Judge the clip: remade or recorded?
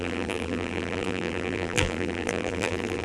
remade